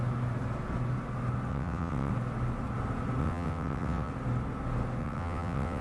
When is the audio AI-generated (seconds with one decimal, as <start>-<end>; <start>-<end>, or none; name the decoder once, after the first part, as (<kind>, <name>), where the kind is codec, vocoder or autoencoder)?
1.5-2.1 (vocoder, WaveNeXt); 3.2-4.1; 5.0-5.8